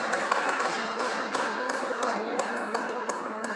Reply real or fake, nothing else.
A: fake